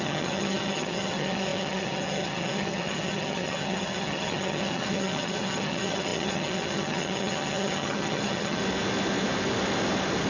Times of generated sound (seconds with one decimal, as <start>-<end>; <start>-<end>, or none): 0.0-8.6